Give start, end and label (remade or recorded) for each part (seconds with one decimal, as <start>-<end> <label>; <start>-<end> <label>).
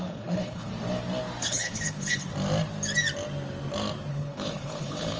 0.0-0.7 remade; 0.7-1.4 recorded; 1.4-2.3 remade; 2.3-4.1 recorded; 4.1-5.2 remade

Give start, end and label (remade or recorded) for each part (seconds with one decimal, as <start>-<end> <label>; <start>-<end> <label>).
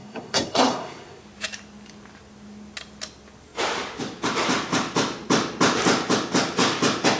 0.0-1.2 remade; 1.2-7.2 recorded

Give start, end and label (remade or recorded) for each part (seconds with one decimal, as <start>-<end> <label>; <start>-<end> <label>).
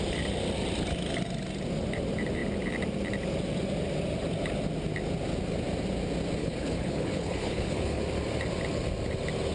0.0-6.4 recorded; 6.4-8.0 remade; 8.0-9.5 recorded